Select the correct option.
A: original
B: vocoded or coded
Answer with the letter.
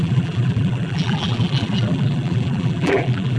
B